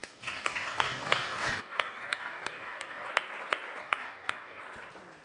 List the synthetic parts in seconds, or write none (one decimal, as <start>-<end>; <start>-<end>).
0.0-3.1; 3.8-4.6